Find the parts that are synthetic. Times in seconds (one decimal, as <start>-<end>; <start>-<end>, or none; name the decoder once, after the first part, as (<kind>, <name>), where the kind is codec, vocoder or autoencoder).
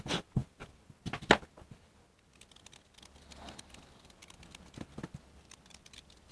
0.0-0.4 (vocoder, BigVGAN v2); 3.6-4.2; 5.1-6.3